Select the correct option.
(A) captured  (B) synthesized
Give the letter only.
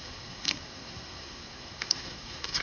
B